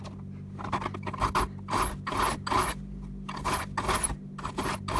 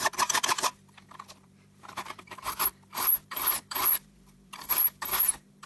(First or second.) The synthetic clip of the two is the second